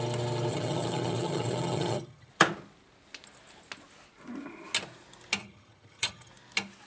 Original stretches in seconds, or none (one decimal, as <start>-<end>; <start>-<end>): 0.0-0.5; 2.3-5.4; 6.3-6.9